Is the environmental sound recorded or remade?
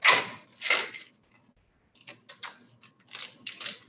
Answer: recorded